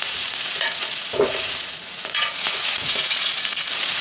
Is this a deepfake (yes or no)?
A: yes